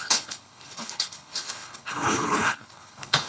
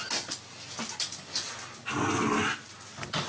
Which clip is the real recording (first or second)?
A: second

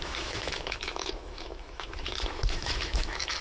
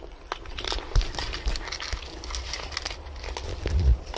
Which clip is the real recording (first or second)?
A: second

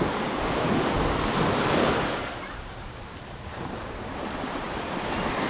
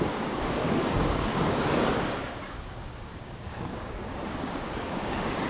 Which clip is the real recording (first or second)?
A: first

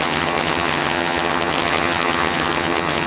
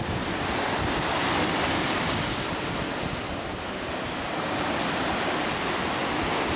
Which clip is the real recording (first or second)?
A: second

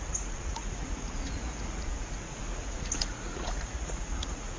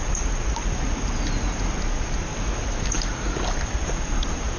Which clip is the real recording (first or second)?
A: second